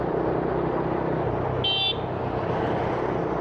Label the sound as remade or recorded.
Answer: recorded